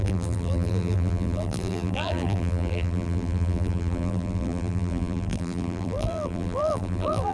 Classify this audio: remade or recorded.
remade